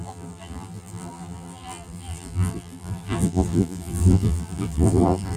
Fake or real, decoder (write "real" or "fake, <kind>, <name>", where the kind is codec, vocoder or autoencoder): fake, vocoder, BigVGAN v2